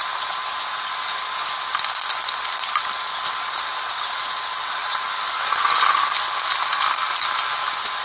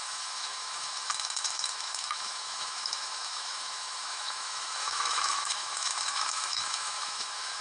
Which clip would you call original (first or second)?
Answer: first